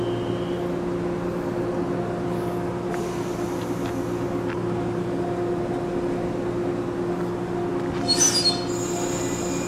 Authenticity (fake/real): real